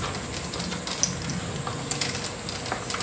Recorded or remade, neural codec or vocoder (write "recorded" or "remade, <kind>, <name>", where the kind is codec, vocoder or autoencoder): recorded